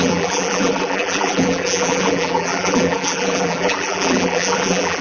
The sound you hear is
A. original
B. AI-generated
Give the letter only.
B